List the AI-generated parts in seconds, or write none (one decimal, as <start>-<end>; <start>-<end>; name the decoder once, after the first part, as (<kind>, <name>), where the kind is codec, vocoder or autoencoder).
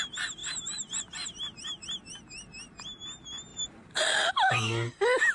0.4-1.0 (vocoder, BigVGAN v2); 3.5-4.3